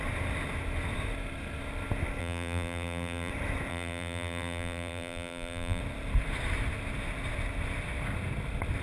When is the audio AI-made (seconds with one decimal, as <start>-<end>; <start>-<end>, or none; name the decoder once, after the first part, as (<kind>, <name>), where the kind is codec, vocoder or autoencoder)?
2.2-3.3 (vocoder, BigVGAN v2); 3.7-5.8